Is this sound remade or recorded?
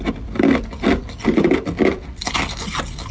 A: recorded